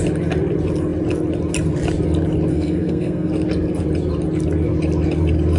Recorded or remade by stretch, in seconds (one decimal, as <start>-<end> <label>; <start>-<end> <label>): 0.0-2.5 recorded; 2.5-3.3 remade; 3.3-5.6 recorded